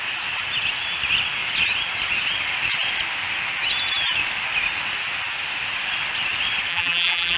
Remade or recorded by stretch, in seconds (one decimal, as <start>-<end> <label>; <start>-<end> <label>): 0.0-6.7 recorded; 6.7-7.4 remade